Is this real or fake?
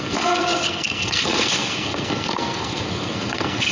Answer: fake